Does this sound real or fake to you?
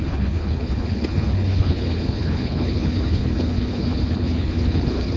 fake